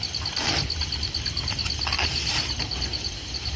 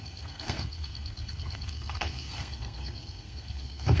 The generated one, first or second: second